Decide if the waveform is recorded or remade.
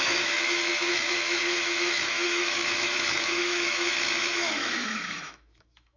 remade